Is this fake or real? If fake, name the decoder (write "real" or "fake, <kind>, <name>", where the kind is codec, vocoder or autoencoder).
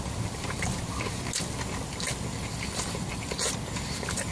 real